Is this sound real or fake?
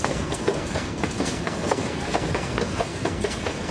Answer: fake